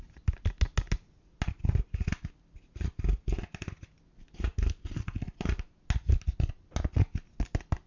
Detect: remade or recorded recorded